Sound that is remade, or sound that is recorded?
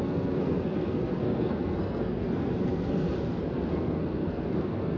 remade